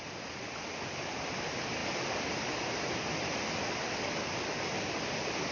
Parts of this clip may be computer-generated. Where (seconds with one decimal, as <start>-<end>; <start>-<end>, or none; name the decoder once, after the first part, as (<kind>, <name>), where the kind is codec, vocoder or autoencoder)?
none